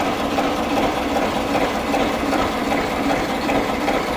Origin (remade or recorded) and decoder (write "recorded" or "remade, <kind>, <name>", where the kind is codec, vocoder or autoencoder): remade, vocoder, BigVGAN v2